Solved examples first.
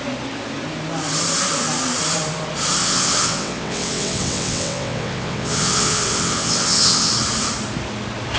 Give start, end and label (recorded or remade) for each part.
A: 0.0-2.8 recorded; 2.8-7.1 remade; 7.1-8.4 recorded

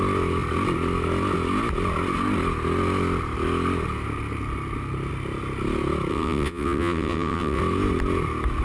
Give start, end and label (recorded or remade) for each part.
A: 0.0-6.1 recorded; 6.1-7.6 remade; 7.6-8.6 recorded

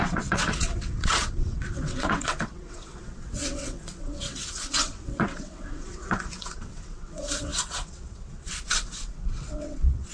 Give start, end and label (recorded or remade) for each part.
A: 0.0-10.1 remade

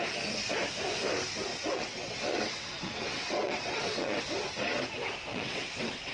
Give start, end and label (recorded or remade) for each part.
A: 0.0-1.5 recorded; 1.5-4.2 remade; 4.2-5.3 recorded; 5.3-6.1 remade

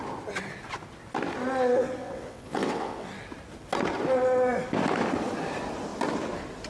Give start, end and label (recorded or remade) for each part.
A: 0.0-2.0 recorded; 2.0-3.1 remade; 3.1-6.7 recorded

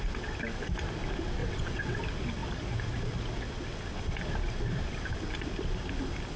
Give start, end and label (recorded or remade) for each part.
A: 0.0-1.4 recorded; 1.4-2.0 remade; 2.0-6.4 recorded